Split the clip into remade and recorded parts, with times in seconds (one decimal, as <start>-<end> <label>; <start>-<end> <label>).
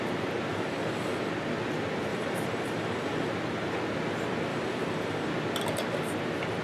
0.0-0.5 recorded; 0.5-1.3 remade; 1.3-2.1 recorded; 2.1-3.3 remade; 3.3-4.5 recorded; 4.5-5.3 remade; 5.3-6.6 recorded